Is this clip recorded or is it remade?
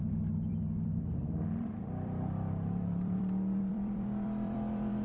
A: remade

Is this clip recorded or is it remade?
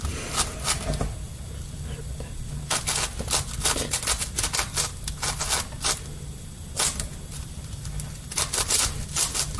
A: recorded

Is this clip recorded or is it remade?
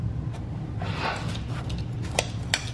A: recorded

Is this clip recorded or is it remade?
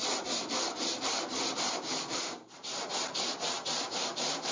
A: remade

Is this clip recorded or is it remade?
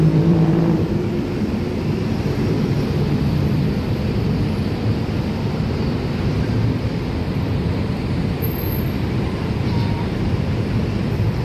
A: remade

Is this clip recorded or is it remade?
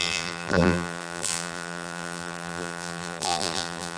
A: remade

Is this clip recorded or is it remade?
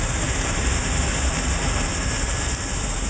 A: remade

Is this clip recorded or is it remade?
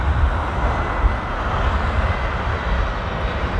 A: recorded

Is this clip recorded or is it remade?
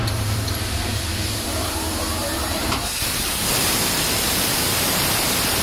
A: remade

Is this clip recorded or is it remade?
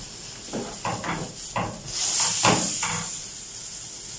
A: recorded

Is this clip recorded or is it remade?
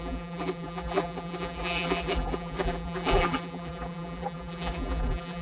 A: remade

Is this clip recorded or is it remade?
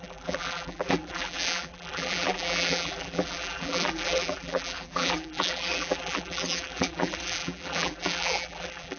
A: remade